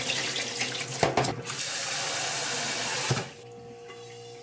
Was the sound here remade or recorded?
recorded